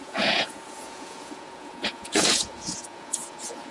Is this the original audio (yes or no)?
no